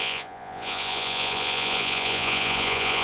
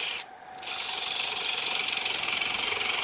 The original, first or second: second